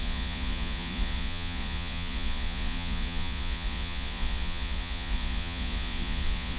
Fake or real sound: fake